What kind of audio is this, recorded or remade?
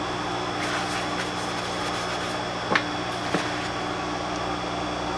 recorded